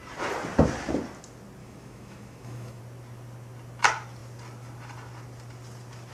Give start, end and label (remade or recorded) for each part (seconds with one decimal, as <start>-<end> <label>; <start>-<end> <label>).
0.0-1.6 recorded; 1.6-2.8 remade; 2.8-6.1 recorded